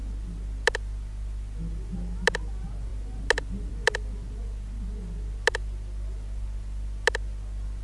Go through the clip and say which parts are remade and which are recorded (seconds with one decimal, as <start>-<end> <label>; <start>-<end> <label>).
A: 0.0-7.8 recorded